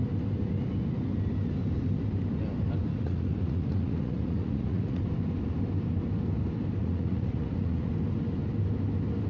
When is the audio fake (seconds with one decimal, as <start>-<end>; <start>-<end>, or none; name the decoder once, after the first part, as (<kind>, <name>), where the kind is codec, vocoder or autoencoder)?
2.9-5.0 (vocoder, Vocos); 6.8-7.9